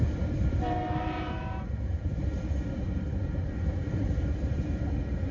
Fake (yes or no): yes